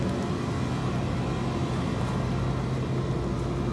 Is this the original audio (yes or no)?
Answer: yes